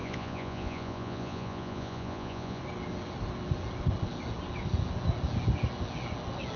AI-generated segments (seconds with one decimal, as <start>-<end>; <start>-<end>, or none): 0.0-2.6